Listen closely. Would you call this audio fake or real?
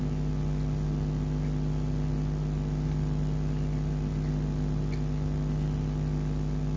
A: real